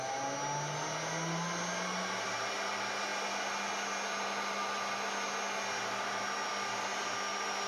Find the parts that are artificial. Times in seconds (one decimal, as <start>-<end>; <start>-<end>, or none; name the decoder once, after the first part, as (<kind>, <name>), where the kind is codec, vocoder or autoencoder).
none